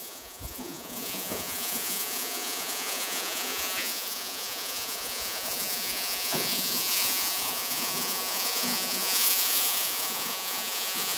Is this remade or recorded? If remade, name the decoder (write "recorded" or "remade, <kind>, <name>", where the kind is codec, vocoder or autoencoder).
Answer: remade, vocoder, Vocos